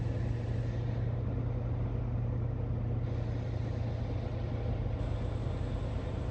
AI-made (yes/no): no